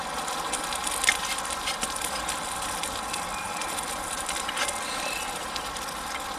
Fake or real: fake